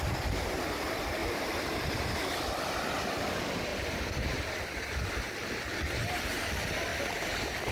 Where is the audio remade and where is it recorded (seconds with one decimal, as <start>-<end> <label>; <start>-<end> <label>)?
0.0-1.2 recorded; 1.2-2.3 remade; 2.3-3.7 recorded; 3.7-4.5 remade; 4.5-5.7 recorded; 5.7-6.3 remade; 6.3-6.9 recorded; 6.9-7.7 remade